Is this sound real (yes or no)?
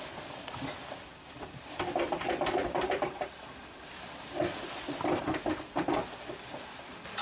yes